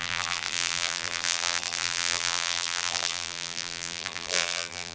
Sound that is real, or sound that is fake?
fake